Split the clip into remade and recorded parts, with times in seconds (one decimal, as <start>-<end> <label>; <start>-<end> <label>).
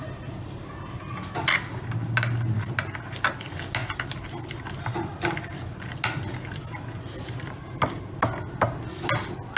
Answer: 0.0-9.6 recorded